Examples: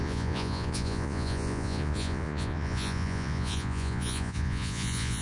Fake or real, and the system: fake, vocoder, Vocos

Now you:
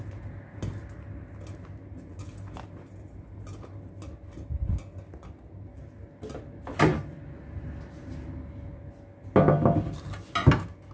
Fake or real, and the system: real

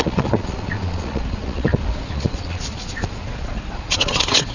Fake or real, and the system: fake, vocoder, Vocos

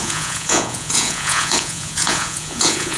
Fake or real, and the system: fake, vocoder, Vocos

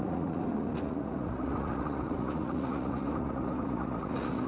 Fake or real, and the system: fake, vocoder, Vocos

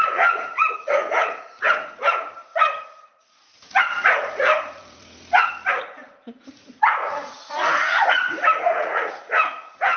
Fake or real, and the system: fake, vocoder, Vocos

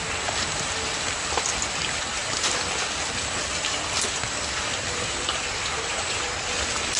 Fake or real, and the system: real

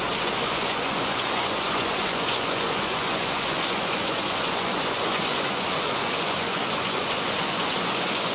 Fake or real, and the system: fake, vocoder, Vocos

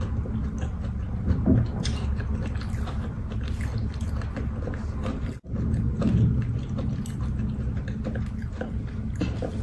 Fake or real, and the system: real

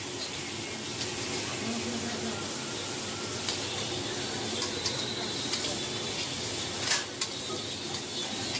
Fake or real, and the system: real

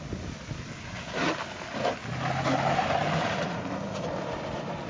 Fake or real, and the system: real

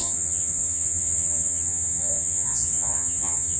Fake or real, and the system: fake, vocoder, Vocos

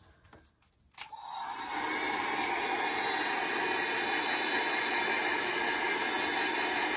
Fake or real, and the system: real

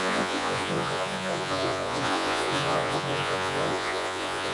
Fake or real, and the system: fake, vocoder, Vocos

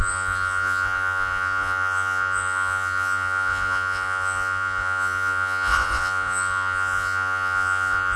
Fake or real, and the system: fake, vocoder, Vocos